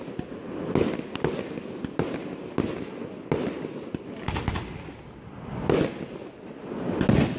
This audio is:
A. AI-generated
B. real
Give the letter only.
B